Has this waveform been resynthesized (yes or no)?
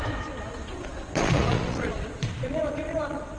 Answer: yes